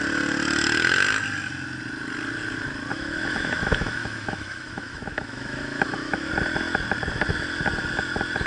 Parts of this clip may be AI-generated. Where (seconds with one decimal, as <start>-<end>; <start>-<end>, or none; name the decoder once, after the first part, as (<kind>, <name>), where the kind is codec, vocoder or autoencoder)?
2.9-6.3 (autoencoder, DAC-VAE)